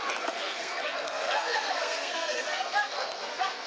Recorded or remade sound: remade